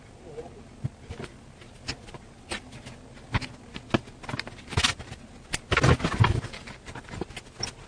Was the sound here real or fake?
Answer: real